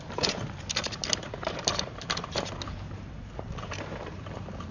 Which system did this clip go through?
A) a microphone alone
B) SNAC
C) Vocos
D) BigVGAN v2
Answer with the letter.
D